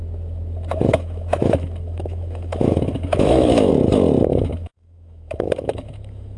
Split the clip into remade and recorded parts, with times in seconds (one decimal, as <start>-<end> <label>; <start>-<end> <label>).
0.0-0.9 recorded; 0.9-3.7 remade; 3.7-4.3 recorded; 4.3-6.4 remade